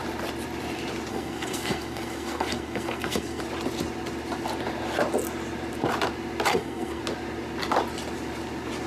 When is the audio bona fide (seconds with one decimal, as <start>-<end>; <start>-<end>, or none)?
0.0-1.1; 3.4-6.5; 7.0-8.9